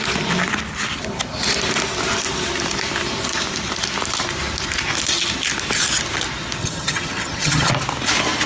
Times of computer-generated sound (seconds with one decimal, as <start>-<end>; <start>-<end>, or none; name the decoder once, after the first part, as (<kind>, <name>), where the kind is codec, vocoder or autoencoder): 6.6-7.7 (vocoder, HiFi-GAN)